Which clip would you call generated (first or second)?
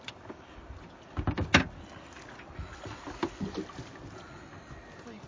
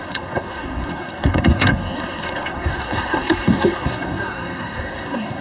second